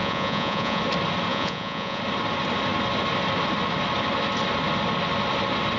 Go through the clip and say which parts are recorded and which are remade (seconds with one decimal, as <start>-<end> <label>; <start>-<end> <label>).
0.0-0.8 remade; 0.8-1.3 recorded; 1.3-2.0 remade; 2.0-5.8 recorded